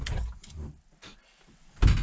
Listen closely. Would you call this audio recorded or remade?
recorded